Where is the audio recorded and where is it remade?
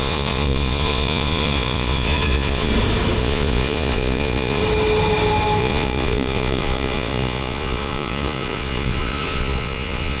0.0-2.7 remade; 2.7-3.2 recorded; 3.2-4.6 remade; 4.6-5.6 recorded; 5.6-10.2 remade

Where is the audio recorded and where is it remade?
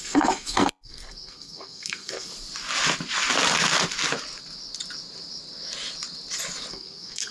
0.0-2.3 remade; 2.3-6.7 recorded; 6.7-7.3 remade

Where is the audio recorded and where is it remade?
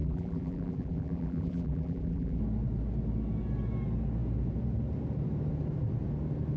0.0-2.4 remade; 2.4-6.6 recorded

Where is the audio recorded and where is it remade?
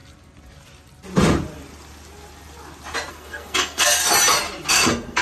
0.0-3.1 recorded; 3.1-4.0 remade; 4.0-4.7 recorded; 4.7-5.2 remade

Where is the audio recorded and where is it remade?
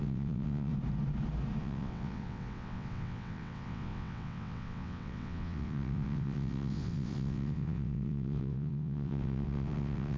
0.0-0.7 remade; 0.7-1.6 recorded; 1.6-10.2 remade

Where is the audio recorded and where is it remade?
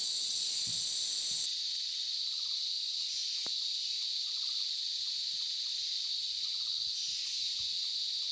0.0-0.7 remade; 0.7-1.5 recorded; 1.5-2.1 remade; 2.1-8.3 recorded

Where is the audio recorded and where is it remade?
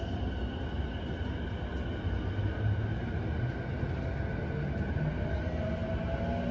0.0-6.5 recorded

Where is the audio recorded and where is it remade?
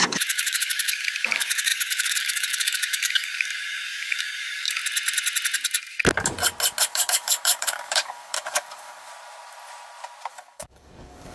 0.0-4.8 remade; 4.8-6.8 recorded; 6.8-9.1 remade; 9.1-10.3 recorded; 10.3-11.3 remade